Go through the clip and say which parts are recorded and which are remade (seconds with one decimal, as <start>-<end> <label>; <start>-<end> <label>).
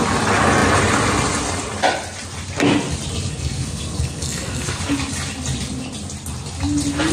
0.0-3.3 recorded; 3.3-4.8 remade; 4.8-7.1 recorded